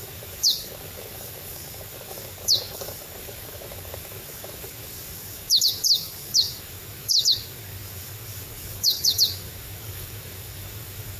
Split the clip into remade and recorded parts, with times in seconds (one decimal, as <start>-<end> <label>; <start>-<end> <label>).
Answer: 0.0-11.2 remade